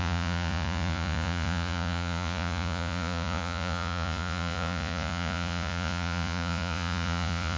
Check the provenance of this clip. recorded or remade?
remade